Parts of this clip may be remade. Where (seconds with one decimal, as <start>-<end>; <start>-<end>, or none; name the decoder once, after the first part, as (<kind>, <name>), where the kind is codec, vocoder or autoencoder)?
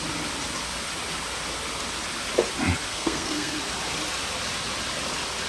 2.9-3.6 (codec, SNAC)